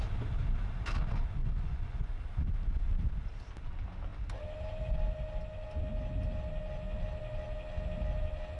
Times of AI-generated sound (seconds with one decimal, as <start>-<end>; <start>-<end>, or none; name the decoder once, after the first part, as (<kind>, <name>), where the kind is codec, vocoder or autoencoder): 1.4-2.2 (vocoder, Vocos)